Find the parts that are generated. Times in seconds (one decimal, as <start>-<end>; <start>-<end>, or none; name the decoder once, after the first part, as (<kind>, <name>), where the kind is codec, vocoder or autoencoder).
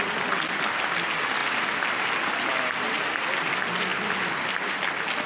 none